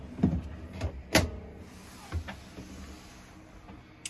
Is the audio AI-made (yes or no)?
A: no